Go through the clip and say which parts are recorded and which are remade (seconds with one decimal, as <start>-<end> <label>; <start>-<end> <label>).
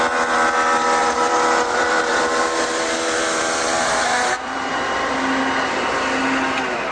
0.0-1.0 recorded; 1.0-4.7 remade; 4.7-6.9 recorded